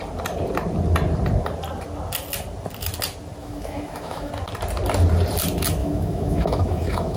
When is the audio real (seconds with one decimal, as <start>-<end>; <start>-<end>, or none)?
0.0-3.4; 4.3-5.8